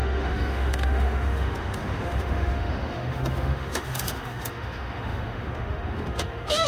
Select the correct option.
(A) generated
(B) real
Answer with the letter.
A